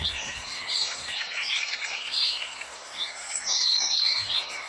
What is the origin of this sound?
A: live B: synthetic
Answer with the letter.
B